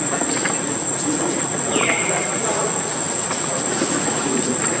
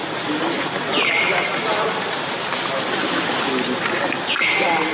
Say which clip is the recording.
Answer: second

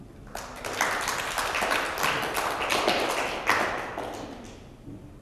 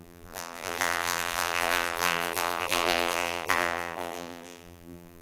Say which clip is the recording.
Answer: first